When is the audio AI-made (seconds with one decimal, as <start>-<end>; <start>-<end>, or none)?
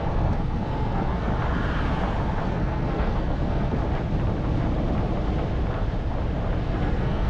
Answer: 0.0-1.3; 2.4-3.8; 6.6-7.3